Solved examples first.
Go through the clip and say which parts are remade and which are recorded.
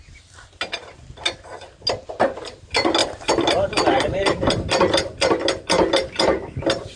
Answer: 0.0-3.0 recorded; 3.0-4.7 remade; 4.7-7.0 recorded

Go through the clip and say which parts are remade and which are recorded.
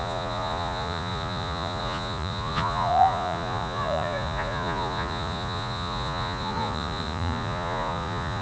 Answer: 0.0-8.4 remade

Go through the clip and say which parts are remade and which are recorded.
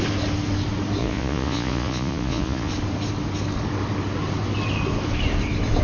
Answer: 0.0-1.0 recorded; 1.0-2.7 remade; 2.7-5.8 recorded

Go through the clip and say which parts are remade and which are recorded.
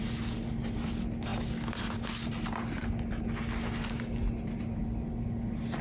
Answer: 0.0-5.8 recorded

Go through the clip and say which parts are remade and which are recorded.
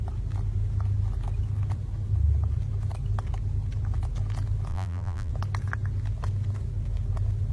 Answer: 0.0-4.7 recorded; 4.7-5.3 remade; 5.3-7.5 recorded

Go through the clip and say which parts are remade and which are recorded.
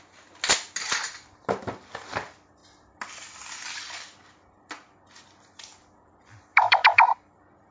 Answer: 0.0-6.5 recorded; 6.5-7.1 remade; 7.1-7.7 recorded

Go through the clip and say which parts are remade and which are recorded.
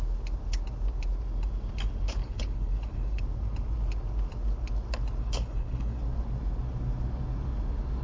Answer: 0.0-2.2 recorded; 2.2-3.2 remade; 3.2-5.2 recorded; 5.2-6.0 remade; 6.0-8.0 recorded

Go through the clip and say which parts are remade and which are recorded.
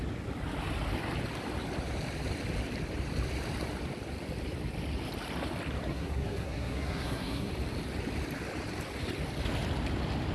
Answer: 0.0-5.9 recorded; 5.9-7.5 remade; 7.5-10.3 recorded